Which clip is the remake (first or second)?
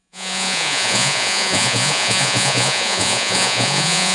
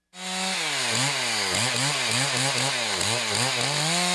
first